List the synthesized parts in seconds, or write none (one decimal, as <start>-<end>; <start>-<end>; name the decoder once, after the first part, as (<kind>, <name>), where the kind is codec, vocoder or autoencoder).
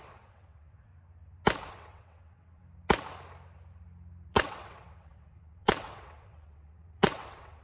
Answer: 0.0-0.9 (vocoder, WaveNeXt); 1.7-2.6; 4.3-7.6